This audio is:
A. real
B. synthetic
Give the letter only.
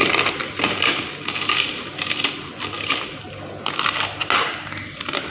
A